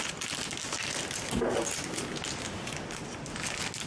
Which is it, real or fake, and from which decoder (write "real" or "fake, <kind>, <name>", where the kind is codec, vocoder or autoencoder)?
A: real